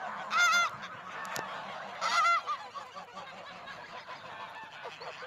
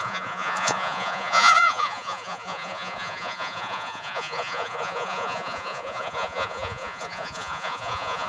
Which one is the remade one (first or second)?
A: second